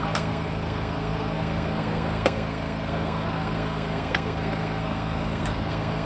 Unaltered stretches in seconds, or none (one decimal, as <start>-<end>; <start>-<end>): none